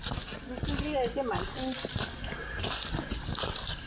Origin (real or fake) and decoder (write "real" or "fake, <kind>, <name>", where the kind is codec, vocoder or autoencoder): real